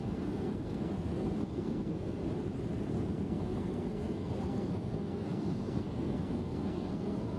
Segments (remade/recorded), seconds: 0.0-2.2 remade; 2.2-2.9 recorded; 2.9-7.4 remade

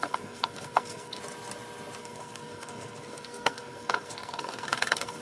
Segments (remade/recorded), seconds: 0.0-1.2 remade; 1.2-2.0 recorded; 2.0-5.2 remade

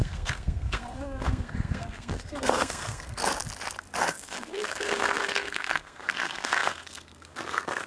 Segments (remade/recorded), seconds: 0.0-3.2 remade; 3.2-4.0 recorded; 4.0-7.9 remade

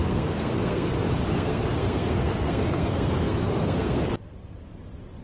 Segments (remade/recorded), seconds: 0.0-0.9 remade; 0.9-1.3 recorded; 1.3-4.1 remade; 4.1-5.2 recorded